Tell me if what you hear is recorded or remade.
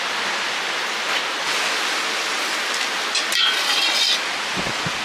recorded